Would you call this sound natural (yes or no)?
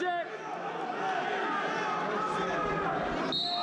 yes